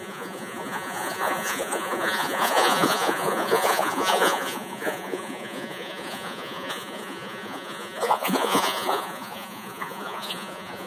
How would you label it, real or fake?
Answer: fake